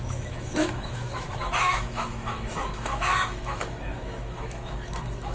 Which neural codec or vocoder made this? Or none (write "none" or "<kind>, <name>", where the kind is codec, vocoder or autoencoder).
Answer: autoencoder, DAC-VAE